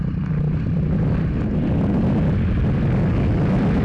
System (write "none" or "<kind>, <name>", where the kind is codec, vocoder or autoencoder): none